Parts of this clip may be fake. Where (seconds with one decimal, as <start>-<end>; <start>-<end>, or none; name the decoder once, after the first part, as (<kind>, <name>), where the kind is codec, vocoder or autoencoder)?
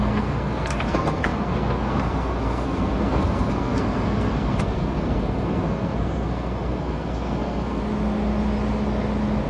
0.0-7.8 (codec, SNAC)